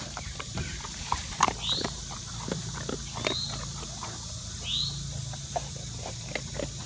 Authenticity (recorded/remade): recorded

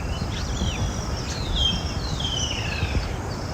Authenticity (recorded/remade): recorded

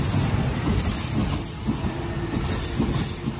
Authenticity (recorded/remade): recorded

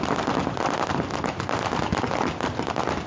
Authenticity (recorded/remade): recorded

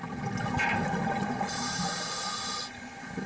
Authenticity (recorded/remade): recorded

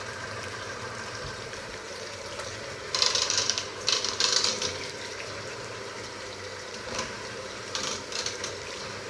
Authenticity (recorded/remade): remade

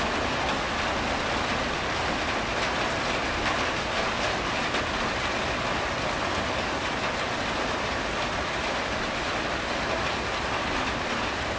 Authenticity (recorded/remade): recorded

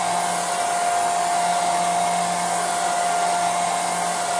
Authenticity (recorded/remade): recorded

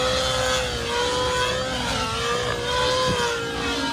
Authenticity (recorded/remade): recorded